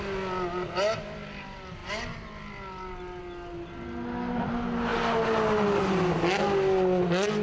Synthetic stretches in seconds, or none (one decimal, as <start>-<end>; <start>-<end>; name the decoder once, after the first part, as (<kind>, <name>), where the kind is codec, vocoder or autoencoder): none